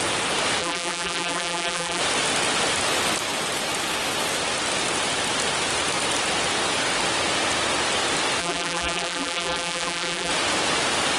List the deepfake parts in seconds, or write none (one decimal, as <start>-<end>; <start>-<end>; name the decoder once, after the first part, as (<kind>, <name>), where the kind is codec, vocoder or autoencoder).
0.6-2.0 (vocoder, BigVGAN v2); 8.4-10.3